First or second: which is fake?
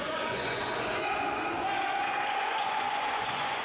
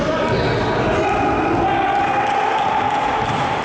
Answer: first